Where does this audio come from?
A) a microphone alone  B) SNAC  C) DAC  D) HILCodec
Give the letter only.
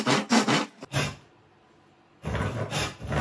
A